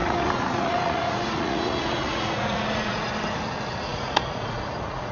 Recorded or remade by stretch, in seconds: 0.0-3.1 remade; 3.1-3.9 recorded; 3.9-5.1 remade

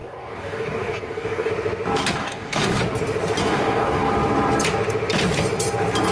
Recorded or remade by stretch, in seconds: 0.0-1.5 remade; 1.5-2.2 recorded; 2.2-2.8 remade; 2.8-3.4 recorded; 3.4-4.1 remade; 4.1-6.1 recorded

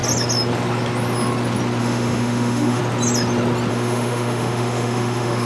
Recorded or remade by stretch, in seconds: 0.0-1.8 recorded; 1.8-2.8 remade; 2.8-3.7 recorded; 3.7-5.5 remade